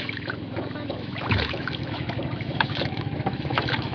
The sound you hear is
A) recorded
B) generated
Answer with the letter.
B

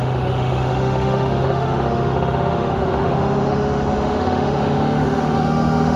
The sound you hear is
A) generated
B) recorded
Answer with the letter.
A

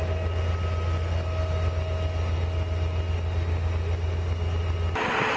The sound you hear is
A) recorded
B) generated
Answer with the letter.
A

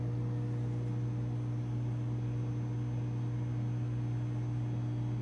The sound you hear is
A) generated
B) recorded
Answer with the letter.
B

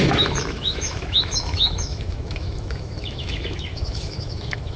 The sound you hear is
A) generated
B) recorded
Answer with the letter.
A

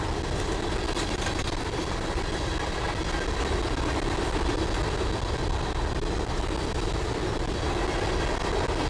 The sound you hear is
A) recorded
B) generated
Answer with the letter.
A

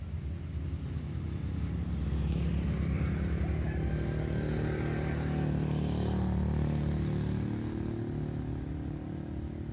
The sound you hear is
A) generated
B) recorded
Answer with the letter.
B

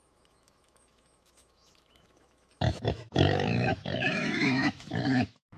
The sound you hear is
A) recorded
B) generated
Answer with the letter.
B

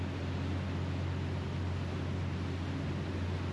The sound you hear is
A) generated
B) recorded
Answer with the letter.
B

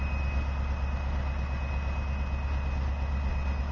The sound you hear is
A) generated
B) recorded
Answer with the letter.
B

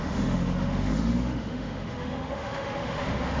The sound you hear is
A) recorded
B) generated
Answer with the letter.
B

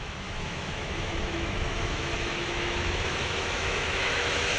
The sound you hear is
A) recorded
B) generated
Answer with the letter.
B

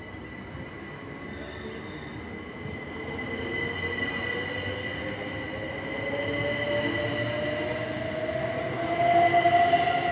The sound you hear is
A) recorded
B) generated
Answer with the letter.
A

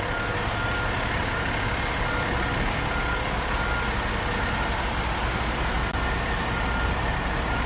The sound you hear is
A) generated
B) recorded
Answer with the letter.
B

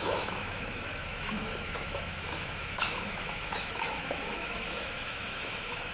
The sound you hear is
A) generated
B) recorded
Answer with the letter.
A